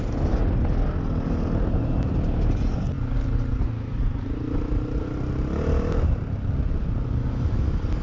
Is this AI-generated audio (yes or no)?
no